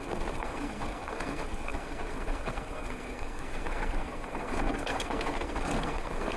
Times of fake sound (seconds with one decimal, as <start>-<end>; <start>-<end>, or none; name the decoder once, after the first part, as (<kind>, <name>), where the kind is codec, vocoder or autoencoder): 0.0-6.4 (codec, SNAC)